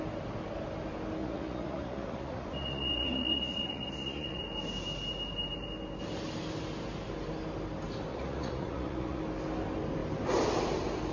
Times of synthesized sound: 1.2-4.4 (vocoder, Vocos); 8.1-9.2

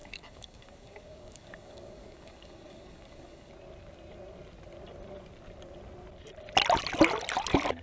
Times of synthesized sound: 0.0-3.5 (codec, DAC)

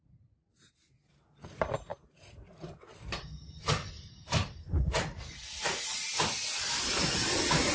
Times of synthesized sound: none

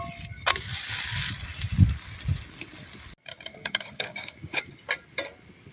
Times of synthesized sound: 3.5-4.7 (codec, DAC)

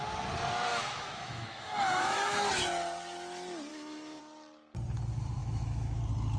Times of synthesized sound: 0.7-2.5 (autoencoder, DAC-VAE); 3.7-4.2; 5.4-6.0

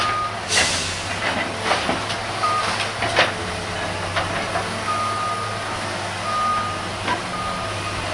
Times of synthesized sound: none